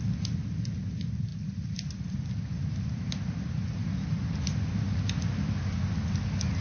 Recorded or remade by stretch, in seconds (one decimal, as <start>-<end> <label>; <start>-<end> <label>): 0.0-6.6 recorded